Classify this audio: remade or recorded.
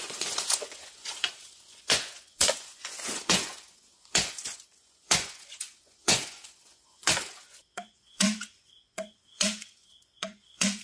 remade